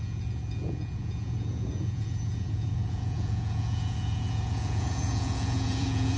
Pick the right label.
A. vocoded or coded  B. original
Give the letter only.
A